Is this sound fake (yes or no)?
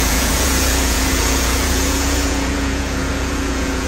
yes